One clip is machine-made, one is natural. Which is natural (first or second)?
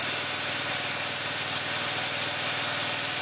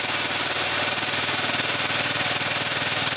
first